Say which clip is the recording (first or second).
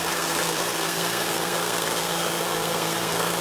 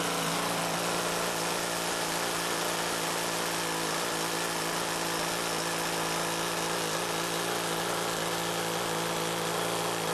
second